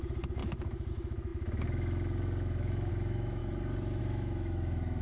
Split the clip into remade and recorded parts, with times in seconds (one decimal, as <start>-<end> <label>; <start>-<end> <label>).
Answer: 0.0-3.4 remade; 3.4-4.0 recorded; 4.0-5.0 remade